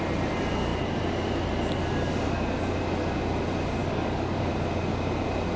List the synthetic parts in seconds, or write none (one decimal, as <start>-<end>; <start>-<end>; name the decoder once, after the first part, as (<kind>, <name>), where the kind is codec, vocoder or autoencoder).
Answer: 3.8-4.5 (codec, DAC)